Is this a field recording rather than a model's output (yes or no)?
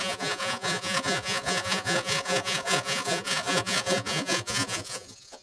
no